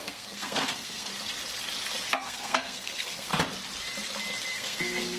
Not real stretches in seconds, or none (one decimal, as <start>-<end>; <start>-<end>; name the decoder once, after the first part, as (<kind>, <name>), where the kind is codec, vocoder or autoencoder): 0.0-1.1 (codec, SNAC); 2.1-3.3; 4.5-5.2